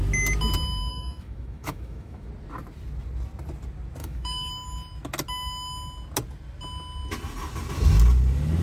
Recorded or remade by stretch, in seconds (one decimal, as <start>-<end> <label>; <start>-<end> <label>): 0.0-0.9 recorded; 0.9-2.3 remade; 2.3-4.0 recorded; 4.0-4.5 remade; 4.5-8.6 recorded